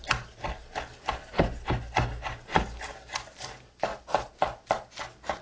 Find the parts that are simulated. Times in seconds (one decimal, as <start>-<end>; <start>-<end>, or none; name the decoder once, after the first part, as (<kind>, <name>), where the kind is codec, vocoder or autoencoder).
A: 0.9-1.6 (vocoder, BigVGAN v2)